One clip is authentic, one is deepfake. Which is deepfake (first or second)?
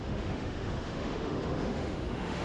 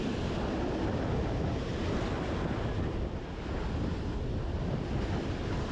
first